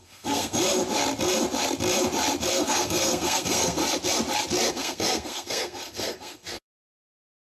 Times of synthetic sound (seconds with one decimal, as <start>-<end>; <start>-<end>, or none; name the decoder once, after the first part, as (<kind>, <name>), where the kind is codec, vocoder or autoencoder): 0.0-0.6 (codec, SNAC); 2.5-3.8; 4.7-7.4